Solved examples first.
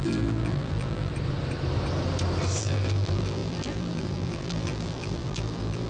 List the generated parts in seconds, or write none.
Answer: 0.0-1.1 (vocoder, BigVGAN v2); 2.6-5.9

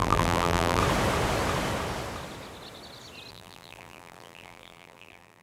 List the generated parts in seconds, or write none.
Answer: 0.0-0.8 (vocoder, BigVGAN v2); 3.3-5.4

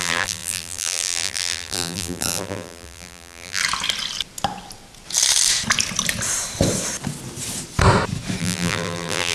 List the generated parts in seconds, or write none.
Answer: 0.0-3.6 (vocoder, BigVGAN v2); 8.4-9.3